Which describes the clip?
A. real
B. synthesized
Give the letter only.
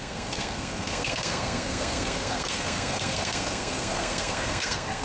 B